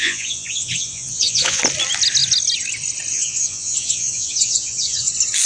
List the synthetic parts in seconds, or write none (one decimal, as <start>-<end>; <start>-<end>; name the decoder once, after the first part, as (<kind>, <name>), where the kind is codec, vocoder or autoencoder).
0.0-1.6 (vocoder, Vocos); 3.1-5.1